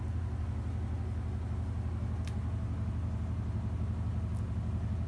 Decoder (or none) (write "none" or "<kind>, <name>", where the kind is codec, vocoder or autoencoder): none